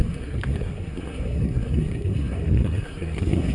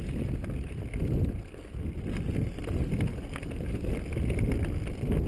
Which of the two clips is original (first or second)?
second